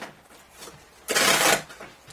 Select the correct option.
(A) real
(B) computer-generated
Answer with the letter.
A